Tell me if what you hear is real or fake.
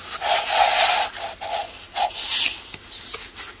real